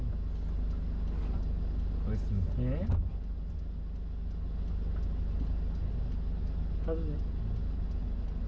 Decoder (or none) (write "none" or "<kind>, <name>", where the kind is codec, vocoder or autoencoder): none